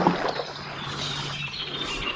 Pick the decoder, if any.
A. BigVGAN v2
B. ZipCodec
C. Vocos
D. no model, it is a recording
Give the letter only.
D